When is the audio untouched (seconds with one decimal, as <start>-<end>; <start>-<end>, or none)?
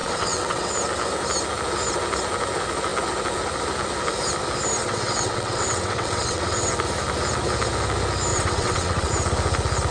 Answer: 0.7-4.8; 6.7-8.3; 9.1-9.9